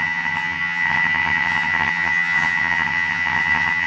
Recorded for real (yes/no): no